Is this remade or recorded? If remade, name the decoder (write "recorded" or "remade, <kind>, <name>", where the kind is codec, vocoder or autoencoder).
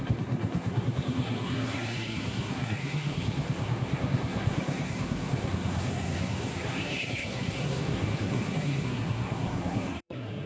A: remade, codec, SNAC